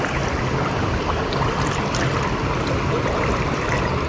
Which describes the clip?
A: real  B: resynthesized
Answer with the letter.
A